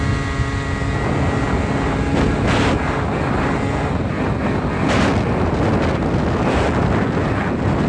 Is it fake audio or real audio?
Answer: real